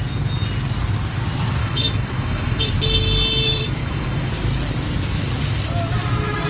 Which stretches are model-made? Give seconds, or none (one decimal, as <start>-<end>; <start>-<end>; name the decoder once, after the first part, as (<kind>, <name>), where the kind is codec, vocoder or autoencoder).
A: 1.6-2.6 (autoencoder, DAC-VAE); 3.8-4.3